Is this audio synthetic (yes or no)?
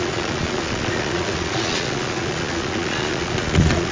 yes